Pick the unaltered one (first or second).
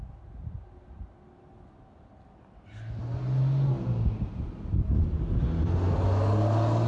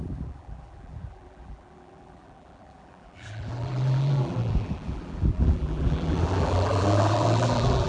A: first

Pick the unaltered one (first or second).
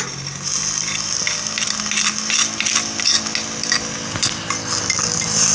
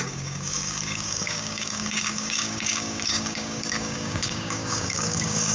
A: first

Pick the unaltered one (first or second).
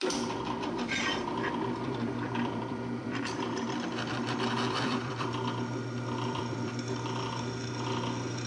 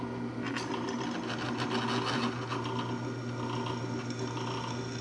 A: second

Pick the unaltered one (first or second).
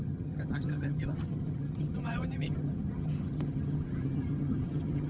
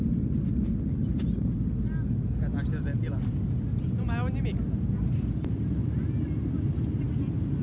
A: second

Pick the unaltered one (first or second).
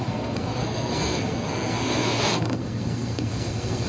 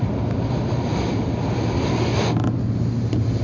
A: second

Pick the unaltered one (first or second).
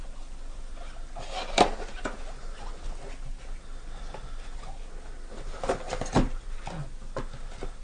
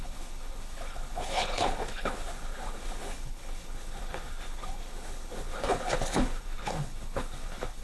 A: first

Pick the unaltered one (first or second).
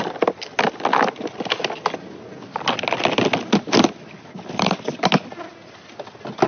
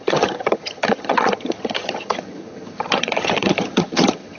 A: first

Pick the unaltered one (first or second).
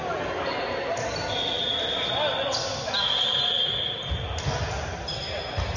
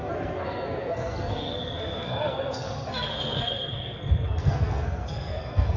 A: first